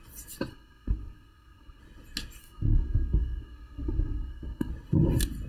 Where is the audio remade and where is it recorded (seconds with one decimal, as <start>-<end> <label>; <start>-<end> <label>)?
0.0-0.5 recorded; 0.5-1.8 remade; 1.8-2.4 recorded; 2.4-4.7 remade; 4.7-5.5 recorded